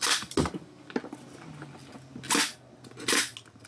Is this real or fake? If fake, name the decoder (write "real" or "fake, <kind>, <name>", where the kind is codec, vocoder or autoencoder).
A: real